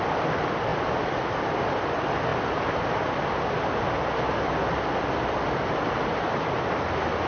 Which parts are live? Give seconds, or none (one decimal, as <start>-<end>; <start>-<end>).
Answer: 0.0-7.3